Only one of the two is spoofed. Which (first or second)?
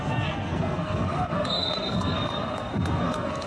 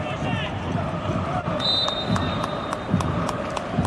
first